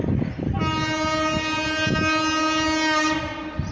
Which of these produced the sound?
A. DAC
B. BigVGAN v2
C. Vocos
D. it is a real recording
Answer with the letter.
D